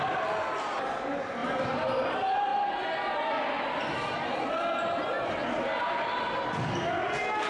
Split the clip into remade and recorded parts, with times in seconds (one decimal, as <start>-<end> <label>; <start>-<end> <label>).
0.0-7.5 recorded